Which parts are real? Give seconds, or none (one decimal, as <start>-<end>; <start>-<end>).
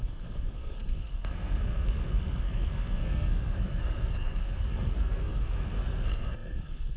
none